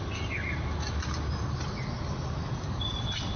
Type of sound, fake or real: real